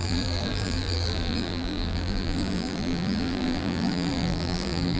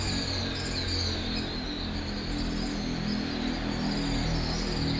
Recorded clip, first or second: second